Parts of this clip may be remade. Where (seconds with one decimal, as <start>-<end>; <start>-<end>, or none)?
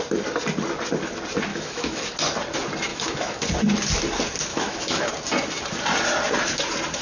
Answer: 1.5-2.0; 2.9-3.5; 4.5-5.1